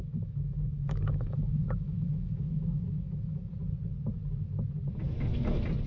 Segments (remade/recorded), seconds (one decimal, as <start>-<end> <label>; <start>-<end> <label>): 0.0-3.5 remade; 3.5-5.9 recorded